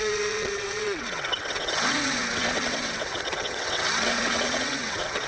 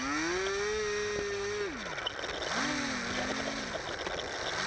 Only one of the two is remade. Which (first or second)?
first